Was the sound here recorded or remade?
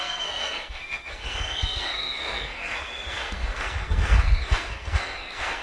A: remade